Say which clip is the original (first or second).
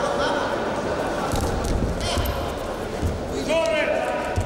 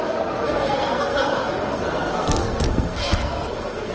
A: first